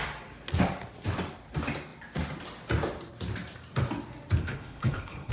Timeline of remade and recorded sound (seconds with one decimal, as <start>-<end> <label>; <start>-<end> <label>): 0.0-4.4 recorded; 4.4-5.3 remade